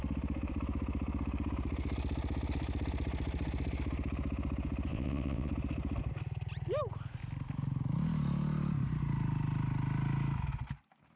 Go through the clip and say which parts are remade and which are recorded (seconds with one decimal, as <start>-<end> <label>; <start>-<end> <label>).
0.0-4.9 recorded; 4.9-5.5 remade; 5.5-11.2 recorded